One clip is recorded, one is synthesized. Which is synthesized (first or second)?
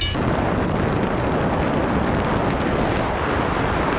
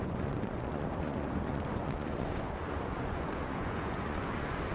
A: second